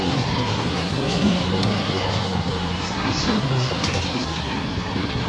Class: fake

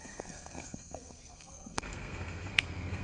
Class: fake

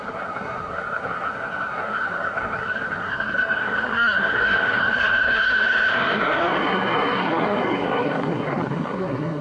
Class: fake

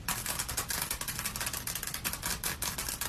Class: real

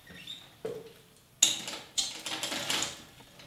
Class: real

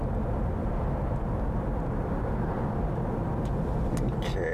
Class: real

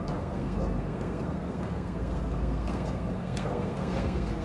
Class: fake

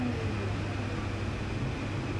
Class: real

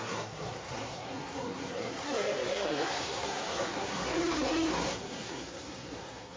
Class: fake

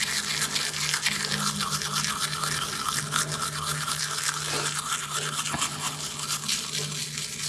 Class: real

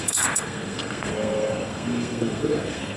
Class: fake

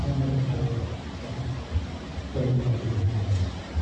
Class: real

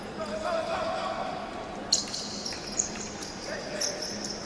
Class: real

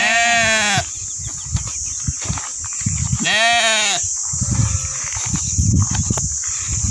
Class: real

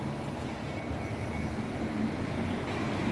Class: real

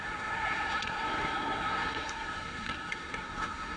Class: fake